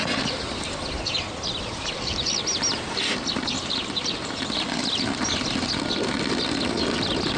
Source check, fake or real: real